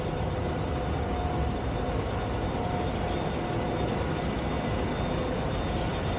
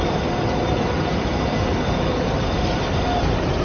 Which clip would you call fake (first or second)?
second